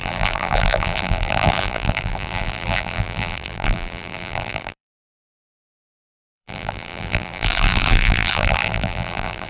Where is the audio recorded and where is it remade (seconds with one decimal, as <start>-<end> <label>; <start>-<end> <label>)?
0.0-9.5 remade